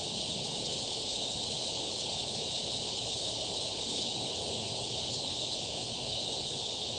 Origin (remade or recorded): remade